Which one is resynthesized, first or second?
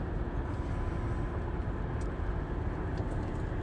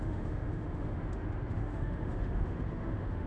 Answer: second